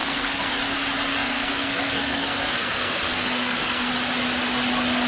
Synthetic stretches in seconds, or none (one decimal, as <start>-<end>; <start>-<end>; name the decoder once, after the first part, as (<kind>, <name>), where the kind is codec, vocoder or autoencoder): 0.0-0.5 (codec, SNAC); 1.1-3.9